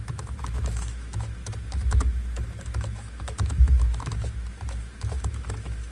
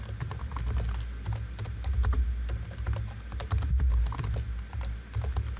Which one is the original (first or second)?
second